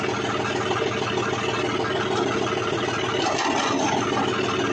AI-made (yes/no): no